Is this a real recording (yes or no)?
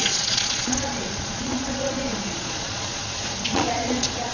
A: no